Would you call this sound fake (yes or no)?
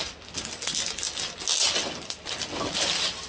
no